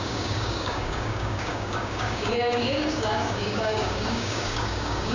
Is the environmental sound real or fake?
fake